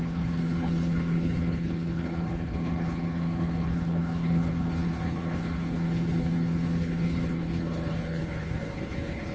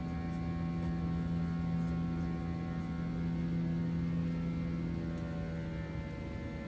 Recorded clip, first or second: second